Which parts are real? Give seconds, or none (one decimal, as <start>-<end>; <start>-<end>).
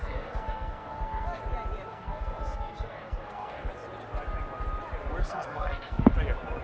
1.4-1.9; 3.7-5.2; 6.1-6.6